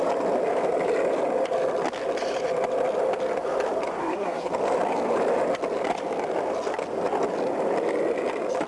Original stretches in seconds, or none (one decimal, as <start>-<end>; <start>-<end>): 0.0-4.0; 4.5-8.7